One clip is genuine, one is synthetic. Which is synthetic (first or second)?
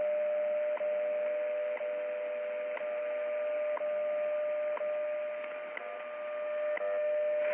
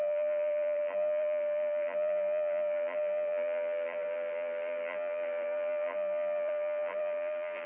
second